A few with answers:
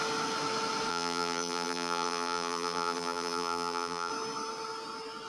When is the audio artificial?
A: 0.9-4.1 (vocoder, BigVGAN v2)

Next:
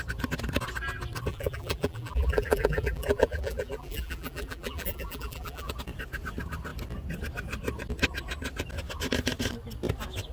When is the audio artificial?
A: 1.3-5.7 (vocoder, BigVGAN v2)

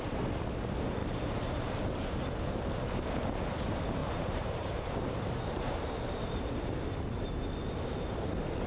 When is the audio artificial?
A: 1.0-2.2 (vocoder, BigVGAN v2); 4.0-8.2